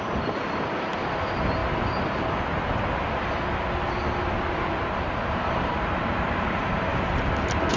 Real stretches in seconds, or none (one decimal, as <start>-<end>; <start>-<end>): 0.0-7.8